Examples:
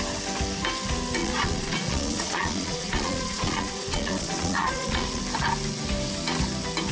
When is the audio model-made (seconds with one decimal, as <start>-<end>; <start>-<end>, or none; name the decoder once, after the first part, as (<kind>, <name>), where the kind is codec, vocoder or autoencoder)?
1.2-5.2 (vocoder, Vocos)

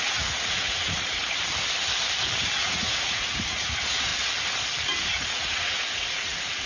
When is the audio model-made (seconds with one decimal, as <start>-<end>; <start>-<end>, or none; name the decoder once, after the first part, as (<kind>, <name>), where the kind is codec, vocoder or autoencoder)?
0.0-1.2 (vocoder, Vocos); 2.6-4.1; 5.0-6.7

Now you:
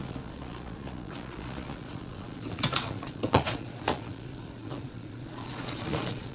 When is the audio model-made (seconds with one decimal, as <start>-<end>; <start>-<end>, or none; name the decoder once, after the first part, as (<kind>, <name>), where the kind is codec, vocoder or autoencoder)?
0.0-6.3 (vocoder, Vocos)

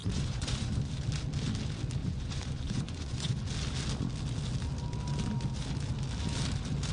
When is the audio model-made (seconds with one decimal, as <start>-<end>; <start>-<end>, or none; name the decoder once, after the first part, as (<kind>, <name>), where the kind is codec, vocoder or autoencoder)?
0.0-0.9 (vocoder, Vocos); 2.0-3.4

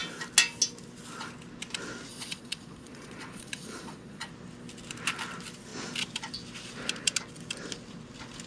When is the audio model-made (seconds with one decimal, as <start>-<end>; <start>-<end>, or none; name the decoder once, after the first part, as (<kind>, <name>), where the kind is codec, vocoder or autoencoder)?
2.1-4.3 (vocoder, Vocos)

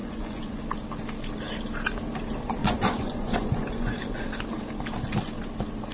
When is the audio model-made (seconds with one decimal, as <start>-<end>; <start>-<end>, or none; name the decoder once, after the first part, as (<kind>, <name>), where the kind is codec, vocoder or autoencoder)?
0.0-0.6 (vocoder, Vocos); 2.6-4.0

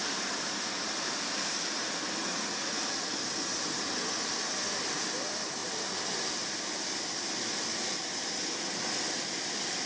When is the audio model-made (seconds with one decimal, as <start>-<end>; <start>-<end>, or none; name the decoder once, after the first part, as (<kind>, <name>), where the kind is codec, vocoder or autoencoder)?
2.3-2.8 (vocoder, Vocos)

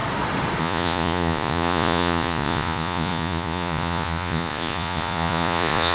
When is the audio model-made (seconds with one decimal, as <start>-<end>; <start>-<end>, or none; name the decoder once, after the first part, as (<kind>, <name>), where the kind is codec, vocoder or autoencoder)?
0.6-5.9 (vocoder, Vocos)